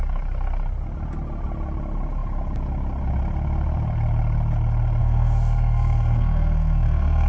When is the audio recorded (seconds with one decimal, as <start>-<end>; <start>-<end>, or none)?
0.0-5.0